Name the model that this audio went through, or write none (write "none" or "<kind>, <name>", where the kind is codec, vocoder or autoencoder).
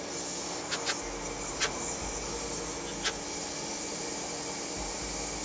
none